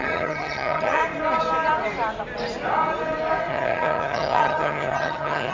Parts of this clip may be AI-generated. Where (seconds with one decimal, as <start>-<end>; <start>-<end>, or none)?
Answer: 0.0-1.0; 3.5-5.5